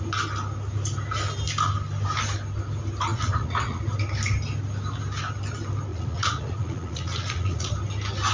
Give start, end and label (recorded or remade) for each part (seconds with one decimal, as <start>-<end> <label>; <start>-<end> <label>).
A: 0.0-3.1 recorded; 3.1-3.8 remade; 3.8-5.9 recorded; 5.9-7.7 remade; 7.7-8.3 recorded

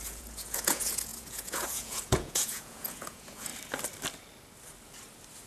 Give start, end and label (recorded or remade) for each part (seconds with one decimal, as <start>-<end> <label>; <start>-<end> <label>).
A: 0.0-3.5 remade; 3.5-5.5 recorded